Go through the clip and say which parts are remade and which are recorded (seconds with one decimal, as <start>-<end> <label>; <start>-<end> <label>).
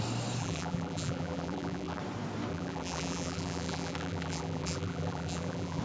0.0-0.4 recorded; 0.4-2.0 remade; 2.0-2.5 recorded; 2.5-5.8 remade